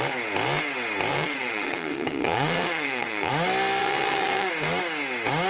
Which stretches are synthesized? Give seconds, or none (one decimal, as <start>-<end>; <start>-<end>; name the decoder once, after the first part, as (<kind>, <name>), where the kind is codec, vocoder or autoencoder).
1.1-3.3 (vocoder, WaveNeXt); 3.8-4.5